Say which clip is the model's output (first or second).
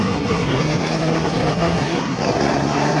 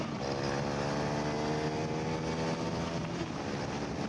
first